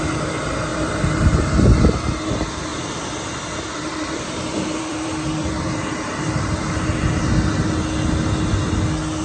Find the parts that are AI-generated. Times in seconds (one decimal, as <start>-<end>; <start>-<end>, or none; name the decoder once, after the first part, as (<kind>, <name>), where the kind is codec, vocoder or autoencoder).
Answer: 2.7-7.2 (vocoder, BigVGAN v2)

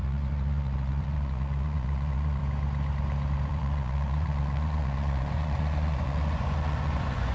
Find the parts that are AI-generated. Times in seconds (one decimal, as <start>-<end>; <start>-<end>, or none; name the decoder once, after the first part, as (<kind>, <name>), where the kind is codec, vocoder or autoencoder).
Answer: 0.0-2.4 (vocoder, Vocos); 3.5-7.3

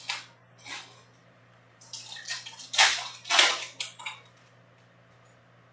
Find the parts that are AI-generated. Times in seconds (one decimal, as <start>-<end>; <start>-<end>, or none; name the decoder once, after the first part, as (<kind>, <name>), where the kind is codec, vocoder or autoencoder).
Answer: 1.2-3.5 (vocoder, BigVGAN v2)

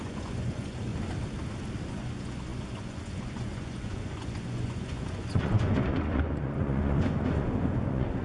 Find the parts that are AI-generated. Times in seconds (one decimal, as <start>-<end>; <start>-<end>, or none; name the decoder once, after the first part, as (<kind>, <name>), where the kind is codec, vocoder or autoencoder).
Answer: 0.0-0.9 (vocoder, Vocos); 1.9-8.2